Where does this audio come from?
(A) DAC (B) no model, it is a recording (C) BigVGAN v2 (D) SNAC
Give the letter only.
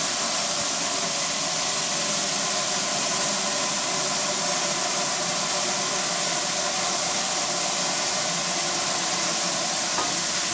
B